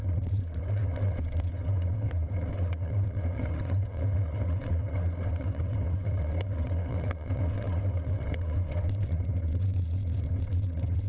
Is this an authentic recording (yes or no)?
no